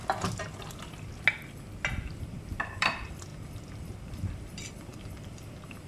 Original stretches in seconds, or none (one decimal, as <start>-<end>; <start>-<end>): 0.0-2.2